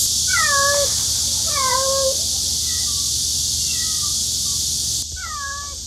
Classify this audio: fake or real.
real